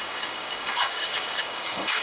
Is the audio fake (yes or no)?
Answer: yes